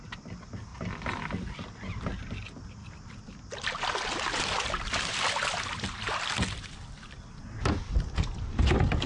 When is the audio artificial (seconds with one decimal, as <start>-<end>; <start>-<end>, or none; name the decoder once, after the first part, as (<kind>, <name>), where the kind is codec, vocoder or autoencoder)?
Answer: none